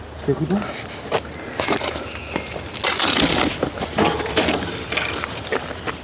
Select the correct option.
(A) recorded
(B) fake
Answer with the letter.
A